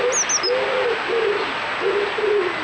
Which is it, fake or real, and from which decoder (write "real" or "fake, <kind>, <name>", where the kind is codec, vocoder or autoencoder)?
real